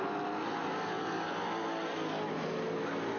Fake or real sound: real